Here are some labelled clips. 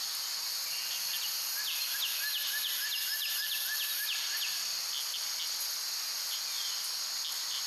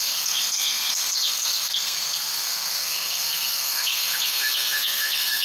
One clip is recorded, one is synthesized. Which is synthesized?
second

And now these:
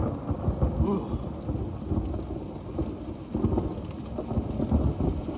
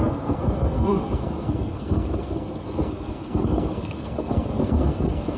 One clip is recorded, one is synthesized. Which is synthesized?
second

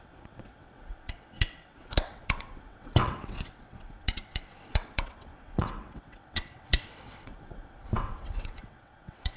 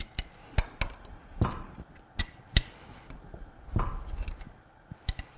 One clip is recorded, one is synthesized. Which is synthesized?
first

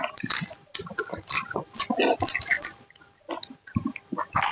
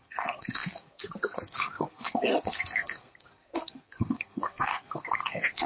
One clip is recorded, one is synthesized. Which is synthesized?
second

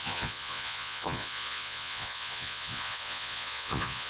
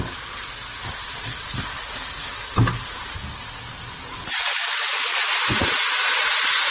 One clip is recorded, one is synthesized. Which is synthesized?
first